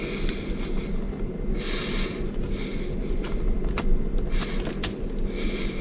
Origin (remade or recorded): recorded